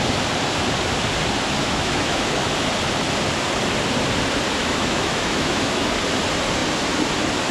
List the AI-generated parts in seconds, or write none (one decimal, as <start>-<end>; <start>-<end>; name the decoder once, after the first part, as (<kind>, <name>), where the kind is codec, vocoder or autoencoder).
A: 1.6-2.4 (autoencoder, DAC-VAE); 4.6-5.9